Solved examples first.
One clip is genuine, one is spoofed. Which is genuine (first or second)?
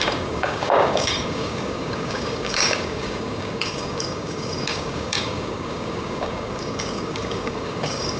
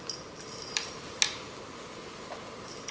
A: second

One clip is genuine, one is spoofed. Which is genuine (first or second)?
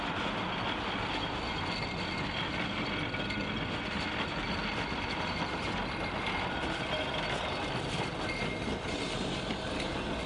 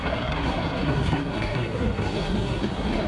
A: first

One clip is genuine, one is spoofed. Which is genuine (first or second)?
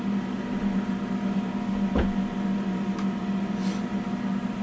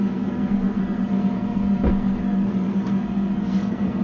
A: first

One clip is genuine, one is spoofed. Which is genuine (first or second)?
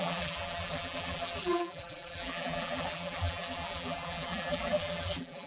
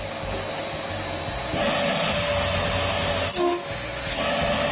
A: second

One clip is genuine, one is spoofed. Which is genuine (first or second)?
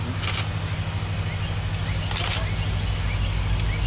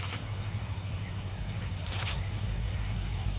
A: first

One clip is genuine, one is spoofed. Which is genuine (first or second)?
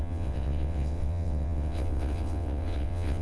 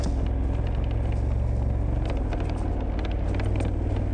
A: second